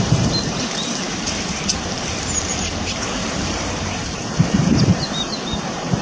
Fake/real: fake